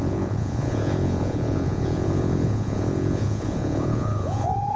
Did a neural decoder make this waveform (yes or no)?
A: yes